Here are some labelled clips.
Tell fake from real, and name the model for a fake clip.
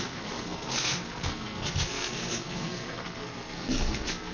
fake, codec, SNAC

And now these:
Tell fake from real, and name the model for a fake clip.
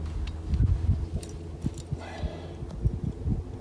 real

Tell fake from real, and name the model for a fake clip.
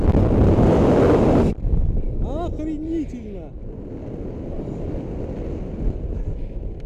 real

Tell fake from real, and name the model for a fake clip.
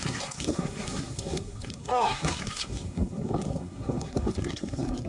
fake, codec, SNAC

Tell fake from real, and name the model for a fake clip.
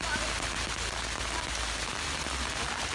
real